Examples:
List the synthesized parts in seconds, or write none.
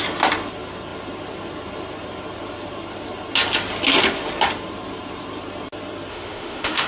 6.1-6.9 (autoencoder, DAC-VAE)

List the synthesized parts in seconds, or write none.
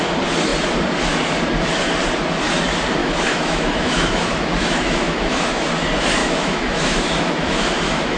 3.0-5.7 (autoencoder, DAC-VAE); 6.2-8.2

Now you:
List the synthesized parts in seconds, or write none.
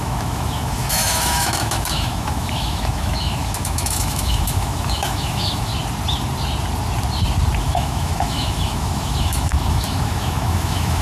0.0-5.7 (autoencoder, DAC-VAE); 7.6-11.0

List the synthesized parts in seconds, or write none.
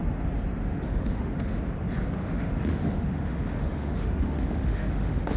0.6-1.6 (autoencoder, DAC-VAE); 2.2-5.4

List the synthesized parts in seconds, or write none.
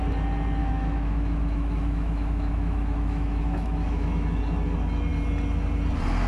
0.6-4.4 (autoencoder, DAC-VAE)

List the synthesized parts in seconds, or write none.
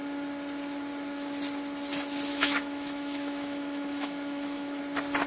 2.3-4.8 (autoencoder, DAC-VAE)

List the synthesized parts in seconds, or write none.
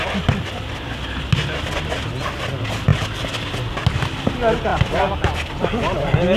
none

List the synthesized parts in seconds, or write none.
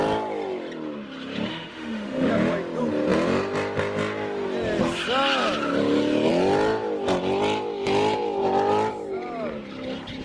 1.5-2.3 (autoencoder, DAC-VAE)